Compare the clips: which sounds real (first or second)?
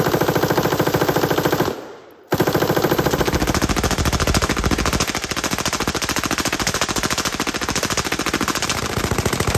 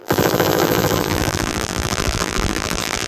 first